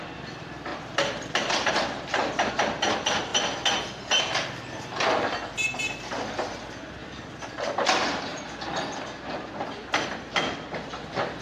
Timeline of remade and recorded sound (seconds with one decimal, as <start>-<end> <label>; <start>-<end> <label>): 0.0-0.7 recorded; 0.7-2.5 remade; 2.5-11.4 recorded